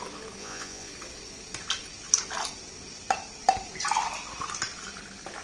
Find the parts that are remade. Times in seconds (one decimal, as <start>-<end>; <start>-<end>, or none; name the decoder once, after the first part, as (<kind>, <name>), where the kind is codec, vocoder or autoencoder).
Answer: 0.4-0.9 (vocoder, Vocos)